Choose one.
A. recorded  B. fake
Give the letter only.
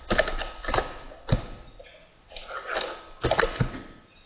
A